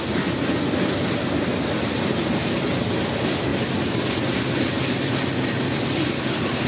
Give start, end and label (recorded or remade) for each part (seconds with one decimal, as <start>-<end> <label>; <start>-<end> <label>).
0.0-2.4 remade; 2.4-2.9 recorded; 2.9-3.5 remade; 3.5-4.4 recorded; 4.4-6.7 remade